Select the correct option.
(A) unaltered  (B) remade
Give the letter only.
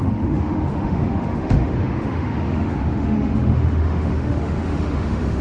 B